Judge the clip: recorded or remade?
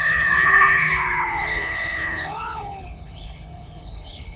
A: remade